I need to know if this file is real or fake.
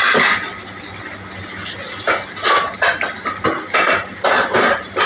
real